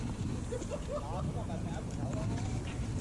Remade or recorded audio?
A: recorded